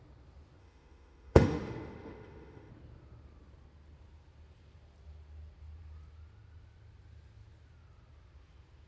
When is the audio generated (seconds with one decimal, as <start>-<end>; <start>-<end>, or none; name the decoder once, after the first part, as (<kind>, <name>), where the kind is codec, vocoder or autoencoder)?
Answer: 0.6-2.7 (autoencoder, DAC-VAE)